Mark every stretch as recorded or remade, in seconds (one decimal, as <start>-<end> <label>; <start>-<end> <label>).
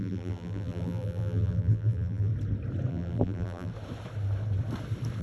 0.0-2.3 remade; 2.3-2.9 recorded; 2.9-3.7 remade; 3.7-5.2 recorded